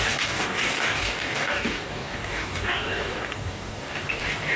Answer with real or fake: fake